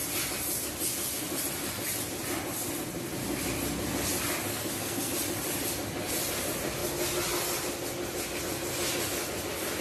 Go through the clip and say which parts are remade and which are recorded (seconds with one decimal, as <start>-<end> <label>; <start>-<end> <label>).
0.0-4.5 recorded; 4.5-5.1 remade; 5.1-9.8 recorded